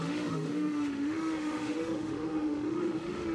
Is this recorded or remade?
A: remade